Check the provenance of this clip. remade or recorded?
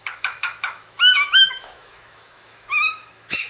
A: remade